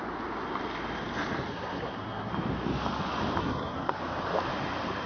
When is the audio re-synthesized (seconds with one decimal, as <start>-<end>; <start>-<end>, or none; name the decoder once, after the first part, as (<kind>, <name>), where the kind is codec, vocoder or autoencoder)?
1.5-2.3 (codec, SNAC); 3.4-4.0